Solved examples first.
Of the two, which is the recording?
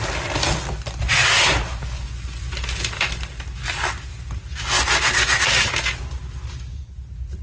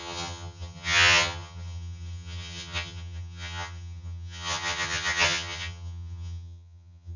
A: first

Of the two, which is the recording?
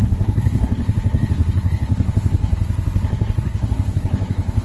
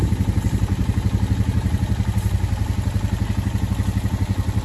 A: second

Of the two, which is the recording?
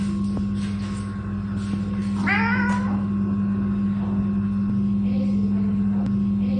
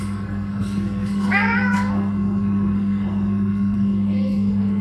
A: first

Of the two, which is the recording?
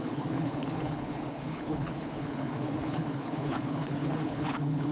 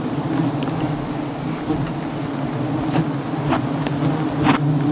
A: second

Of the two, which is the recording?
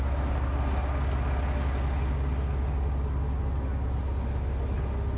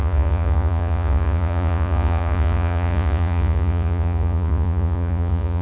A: first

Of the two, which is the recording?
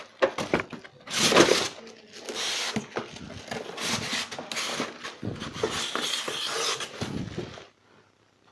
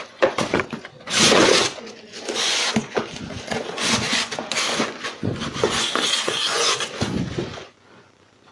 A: first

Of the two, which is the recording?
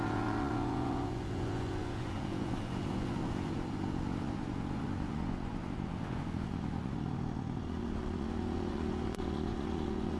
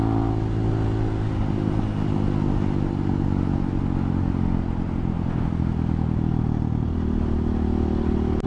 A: second